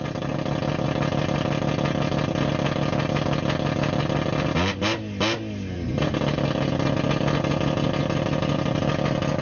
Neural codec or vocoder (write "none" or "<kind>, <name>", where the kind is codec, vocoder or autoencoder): none